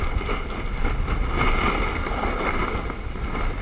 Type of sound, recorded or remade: recorded